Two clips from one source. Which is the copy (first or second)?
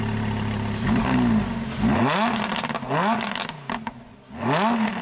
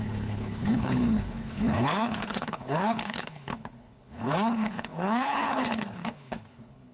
second